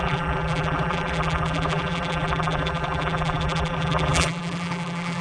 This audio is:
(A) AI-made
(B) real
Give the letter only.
A